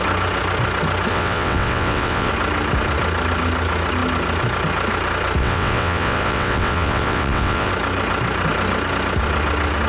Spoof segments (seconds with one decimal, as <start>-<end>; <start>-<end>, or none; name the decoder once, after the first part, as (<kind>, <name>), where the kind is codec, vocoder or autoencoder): 1.1-2.3 (vocoder, WaveNeXt); 5.4-7.7